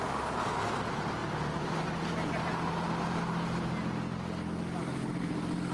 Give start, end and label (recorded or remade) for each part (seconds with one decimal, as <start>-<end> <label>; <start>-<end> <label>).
0.0-5.7 recorded